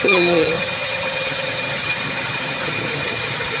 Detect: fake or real fake